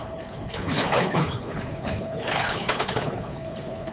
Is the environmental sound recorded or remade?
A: remade